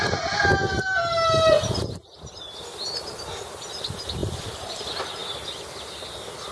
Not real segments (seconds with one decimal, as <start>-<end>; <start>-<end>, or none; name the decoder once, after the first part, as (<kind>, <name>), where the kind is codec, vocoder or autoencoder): none